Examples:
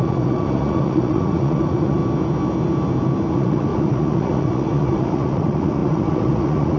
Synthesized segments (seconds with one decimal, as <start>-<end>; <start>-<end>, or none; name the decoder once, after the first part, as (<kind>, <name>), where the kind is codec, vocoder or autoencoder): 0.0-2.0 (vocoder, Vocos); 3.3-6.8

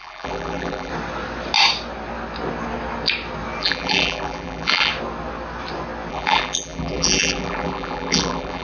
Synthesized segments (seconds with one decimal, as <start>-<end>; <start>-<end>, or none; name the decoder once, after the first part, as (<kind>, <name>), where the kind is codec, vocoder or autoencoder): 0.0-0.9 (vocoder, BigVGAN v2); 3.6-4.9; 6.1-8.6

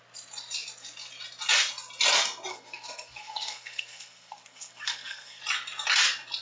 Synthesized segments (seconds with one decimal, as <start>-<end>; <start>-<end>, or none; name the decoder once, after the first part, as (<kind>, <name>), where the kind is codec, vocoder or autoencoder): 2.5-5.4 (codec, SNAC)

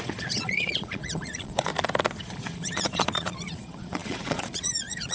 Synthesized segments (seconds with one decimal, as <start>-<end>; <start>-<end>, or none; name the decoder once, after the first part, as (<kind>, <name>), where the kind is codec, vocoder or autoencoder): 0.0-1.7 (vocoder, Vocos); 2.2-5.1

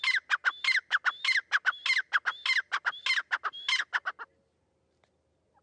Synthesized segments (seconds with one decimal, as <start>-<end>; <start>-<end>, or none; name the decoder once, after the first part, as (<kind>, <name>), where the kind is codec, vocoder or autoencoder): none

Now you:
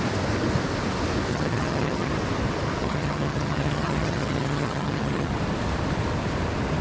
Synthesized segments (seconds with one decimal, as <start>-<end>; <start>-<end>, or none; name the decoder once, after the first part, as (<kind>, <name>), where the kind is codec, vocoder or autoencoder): 1.3-2.1 (vocoder, HiFi-GAN); 2.8-5.3

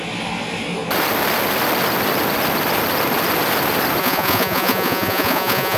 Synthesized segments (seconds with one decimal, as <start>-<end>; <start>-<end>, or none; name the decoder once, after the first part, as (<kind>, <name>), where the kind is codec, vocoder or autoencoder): 4.0-5.8 (vocoder, Vocos)

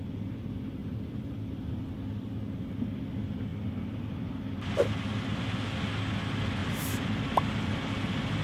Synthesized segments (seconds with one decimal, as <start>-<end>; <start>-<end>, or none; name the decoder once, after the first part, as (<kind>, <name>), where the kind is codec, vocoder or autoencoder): 0.8-1.8 (vocoder, BigVGAN v2); 6.6-7.9